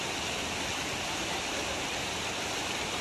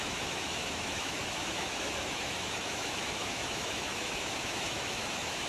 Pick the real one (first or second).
first